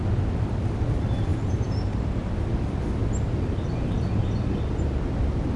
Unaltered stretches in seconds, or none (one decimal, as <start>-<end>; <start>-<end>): 0.0-1.3; 2.3-5.6